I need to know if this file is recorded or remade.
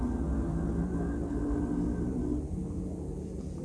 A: recorded